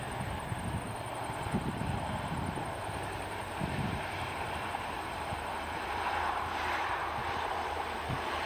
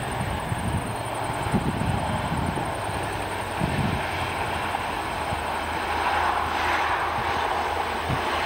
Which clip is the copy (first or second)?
first